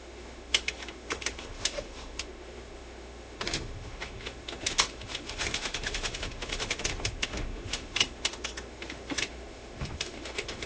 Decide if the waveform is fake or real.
fake